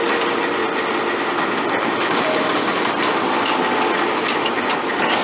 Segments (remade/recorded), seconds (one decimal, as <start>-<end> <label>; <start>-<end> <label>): 0.0-0.6 remade; 0.6-3.7 recorded; 3.7-5.2 remade